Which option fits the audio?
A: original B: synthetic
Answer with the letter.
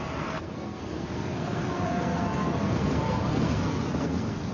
B